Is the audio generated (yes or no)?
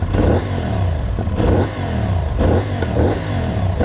yes